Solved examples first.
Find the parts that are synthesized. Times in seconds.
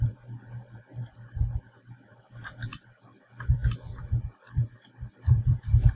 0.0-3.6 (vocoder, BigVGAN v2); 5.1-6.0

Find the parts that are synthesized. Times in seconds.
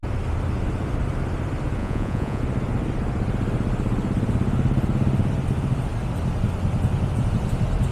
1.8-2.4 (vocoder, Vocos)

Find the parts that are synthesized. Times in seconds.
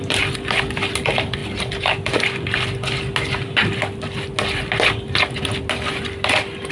none